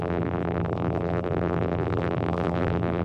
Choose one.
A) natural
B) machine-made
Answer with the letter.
B